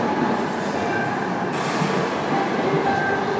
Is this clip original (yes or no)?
yes